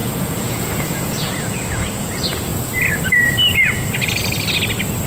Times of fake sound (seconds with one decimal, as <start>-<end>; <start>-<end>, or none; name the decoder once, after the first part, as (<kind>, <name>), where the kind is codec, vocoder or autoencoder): 0.0-2.5 (vocoder, Vocos)